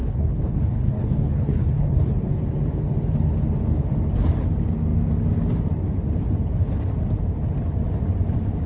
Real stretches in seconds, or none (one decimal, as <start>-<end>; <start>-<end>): 2.3-8.7